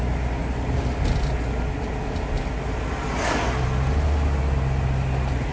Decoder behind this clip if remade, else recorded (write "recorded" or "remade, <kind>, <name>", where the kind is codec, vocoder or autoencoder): recorded